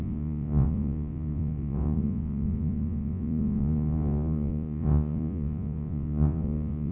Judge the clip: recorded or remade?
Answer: remade